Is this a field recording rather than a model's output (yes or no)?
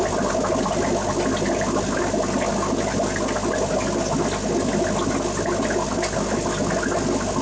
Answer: yes